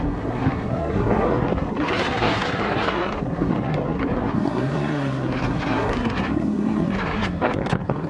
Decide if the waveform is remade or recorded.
remade